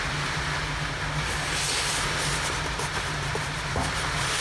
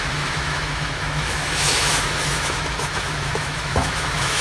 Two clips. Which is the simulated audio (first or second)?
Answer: second